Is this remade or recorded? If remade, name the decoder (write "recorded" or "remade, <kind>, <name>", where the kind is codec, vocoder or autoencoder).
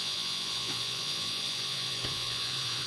remade, vocoder, Vocos